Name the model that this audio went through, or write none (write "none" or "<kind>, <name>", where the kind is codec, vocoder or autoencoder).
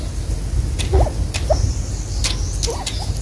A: none